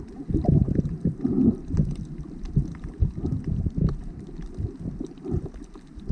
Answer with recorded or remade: remade